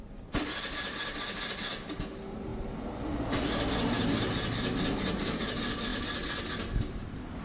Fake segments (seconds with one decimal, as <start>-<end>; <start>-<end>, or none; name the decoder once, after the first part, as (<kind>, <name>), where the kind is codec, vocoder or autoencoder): none